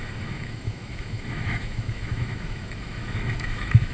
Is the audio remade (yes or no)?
yes